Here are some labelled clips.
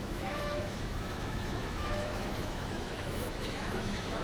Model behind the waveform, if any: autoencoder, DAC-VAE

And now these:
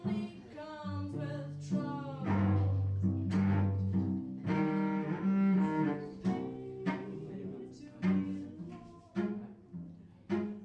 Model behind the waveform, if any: none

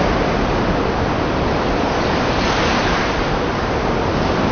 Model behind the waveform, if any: none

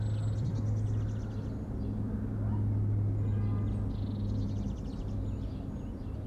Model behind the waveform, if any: none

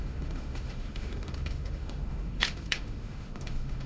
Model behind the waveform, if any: autoencoder, DAC-VAE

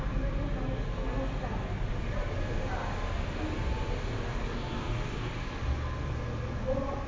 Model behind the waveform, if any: none